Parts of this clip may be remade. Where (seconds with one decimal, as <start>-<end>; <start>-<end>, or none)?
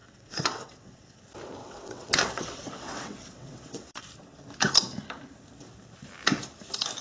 0.0-1.2; 1.6-4.0